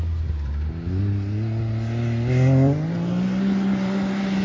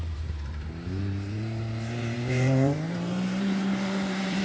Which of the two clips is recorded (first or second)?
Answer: first